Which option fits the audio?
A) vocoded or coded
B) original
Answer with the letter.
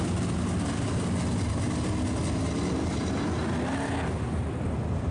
B